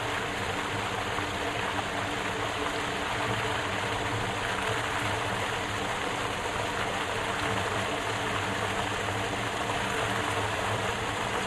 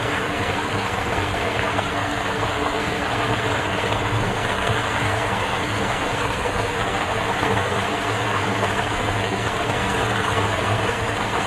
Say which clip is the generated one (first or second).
second